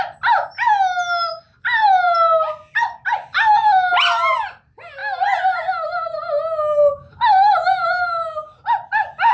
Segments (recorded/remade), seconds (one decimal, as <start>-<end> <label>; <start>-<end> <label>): 0.0-9.3 recorded